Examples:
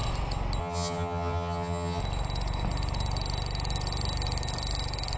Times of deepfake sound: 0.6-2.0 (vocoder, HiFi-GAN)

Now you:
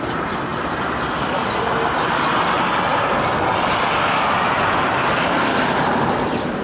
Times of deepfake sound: 0.5-1.5 (vocoder, BigVGAN v2)

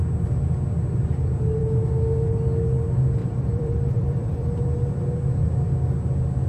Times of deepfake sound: 3.2-4.5 (vocoder, BigVGAN v2)

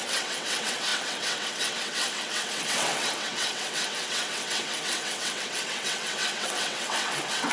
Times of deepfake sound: 0.0-7.5 (vocoder, WaveNeXt)

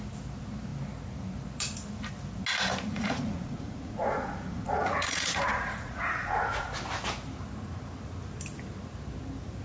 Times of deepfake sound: 2.9-6.8 (vocoder, Vocos)

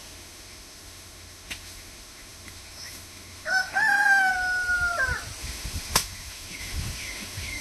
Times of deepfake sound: 0.0-4.3 (autoencoder, DAC-VAE); 5.4-7.6